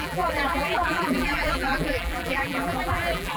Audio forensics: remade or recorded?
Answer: remade